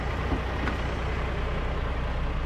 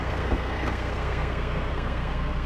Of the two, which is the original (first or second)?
first